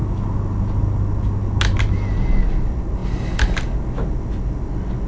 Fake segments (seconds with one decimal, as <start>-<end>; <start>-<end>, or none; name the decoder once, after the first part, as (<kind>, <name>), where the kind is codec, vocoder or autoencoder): none